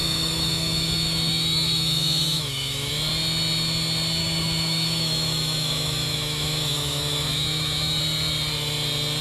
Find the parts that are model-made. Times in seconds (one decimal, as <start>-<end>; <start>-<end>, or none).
0.0-2.9; 4.2-8.0